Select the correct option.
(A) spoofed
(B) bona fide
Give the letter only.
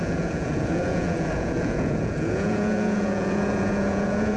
A